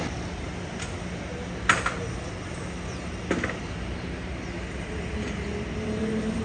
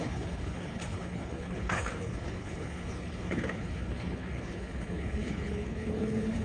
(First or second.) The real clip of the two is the first